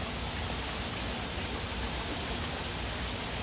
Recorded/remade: recorded